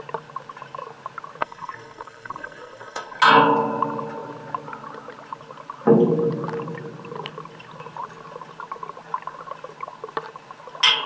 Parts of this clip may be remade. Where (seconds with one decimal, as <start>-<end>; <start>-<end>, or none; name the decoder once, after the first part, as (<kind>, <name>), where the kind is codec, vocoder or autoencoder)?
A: 1.4-3.2 (codec, SNAC)